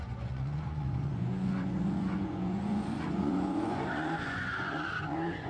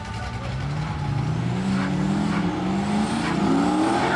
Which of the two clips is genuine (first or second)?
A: second